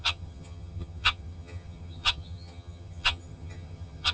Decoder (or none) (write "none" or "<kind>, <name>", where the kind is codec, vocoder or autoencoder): vocoder, HiFi-GAN